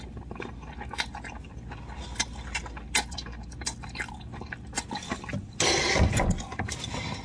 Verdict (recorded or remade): recorded